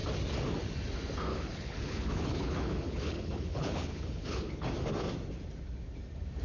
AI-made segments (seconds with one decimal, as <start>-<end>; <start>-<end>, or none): 1.3-4.7